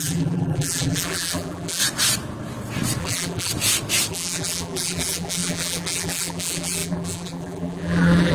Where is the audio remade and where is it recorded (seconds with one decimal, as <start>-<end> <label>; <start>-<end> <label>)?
0.0-1.8 remade; 1.8-3.0 recorded; 3.0-3.5 remade; 3.5-4.1 recorded; 4.1-8.3 remade